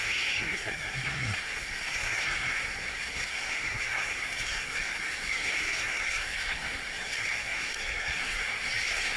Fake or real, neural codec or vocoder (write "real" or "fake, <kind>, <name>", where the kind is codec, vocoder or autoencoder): fake, codec, SNAC